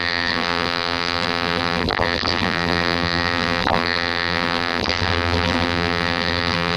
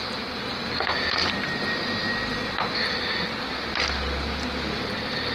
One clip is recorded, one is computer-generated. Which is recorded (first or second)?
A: second